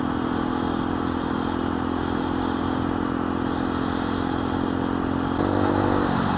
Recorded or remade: recorded